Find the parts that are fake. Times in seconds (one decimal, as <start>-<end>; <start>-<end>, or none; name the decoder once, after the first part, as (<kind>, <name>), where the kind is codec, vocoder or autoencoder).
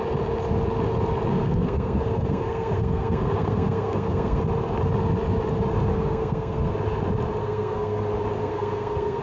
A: 1.3-4.4 (codec, SNAC); 5.9-6.7; 7.4-8.0; 8.4-9.2